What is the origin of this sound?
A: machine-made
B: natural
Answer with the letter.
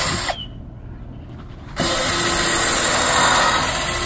B